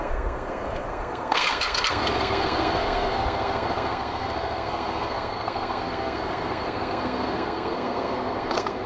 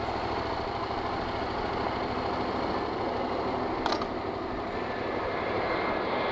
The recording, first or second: second